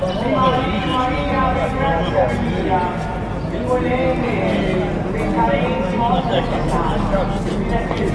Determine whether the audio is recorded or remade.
recorded